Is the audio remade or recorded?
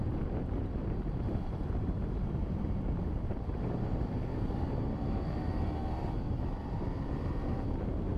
remade